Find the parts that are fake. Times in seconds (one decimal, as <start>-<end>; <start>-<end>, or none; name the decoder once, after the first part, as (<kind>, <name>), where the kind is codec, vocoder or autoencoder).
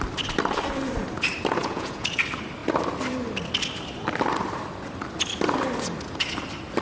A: 1.6-2.2 (vocoder, Vocos)